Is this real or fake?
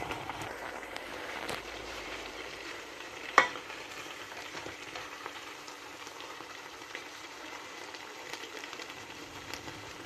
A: fake